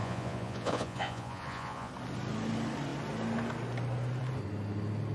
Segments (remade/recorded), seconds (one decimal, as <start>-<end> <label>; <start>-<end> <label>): 0.0-1.9 remade; 1.9-5.1 recorded